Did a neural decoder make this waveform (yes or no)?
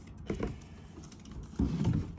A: no